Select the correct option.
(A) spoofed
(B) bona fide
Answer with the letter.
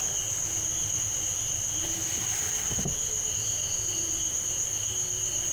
B